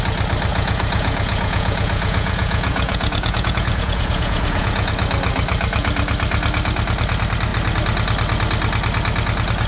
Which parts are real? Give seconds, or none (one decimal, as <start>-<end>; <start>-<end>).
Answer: 0.0-0.5; 4.9-9.7